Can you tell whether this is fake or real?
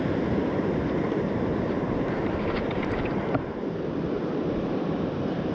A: fake